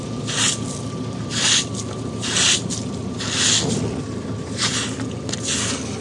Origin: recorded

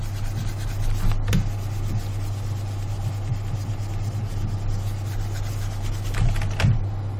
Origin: recorded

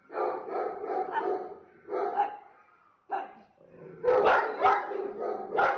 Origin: recorded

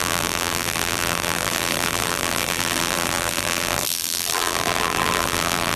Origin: remade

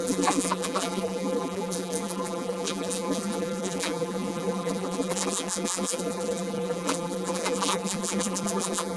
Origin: remade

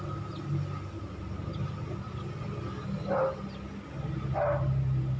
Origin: recorded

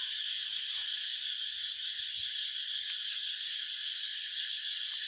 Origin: recorded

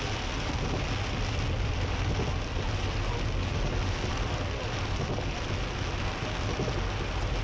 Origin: recorded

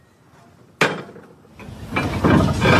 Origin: recorded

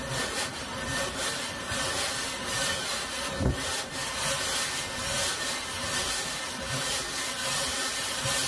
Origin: recorded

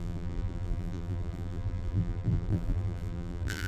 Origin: remade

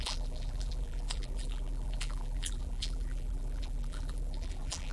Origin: remade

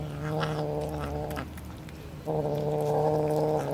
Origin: recorded